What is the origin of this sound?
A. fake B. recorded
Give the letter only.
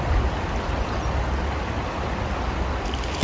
B